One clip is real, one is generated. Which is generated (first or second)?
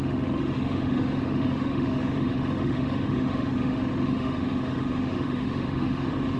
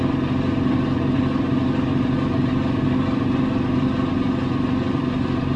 first